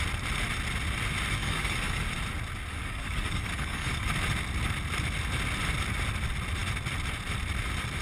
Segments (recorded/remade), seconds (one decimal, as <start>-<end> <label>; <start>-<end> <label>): 0.0-1.4 recorded; 1.4-2.0 remade; 2.0-2.7 recorded; 2.7-4.1 remade; 4.1-8.0 recorded